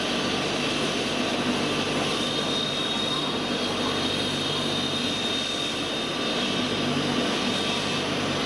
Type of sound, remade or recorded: recorded